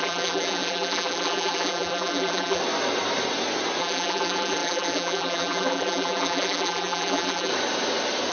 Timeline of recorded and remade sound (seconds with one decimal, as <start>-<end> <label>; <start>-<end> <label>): 0.0-2.6 remade; 2.6-3.8 recorded; 3.8-7.5 remade; 7.5-8.3 recorded